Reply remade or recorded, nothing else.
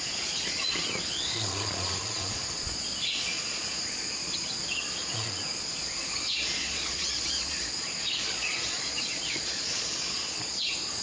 remade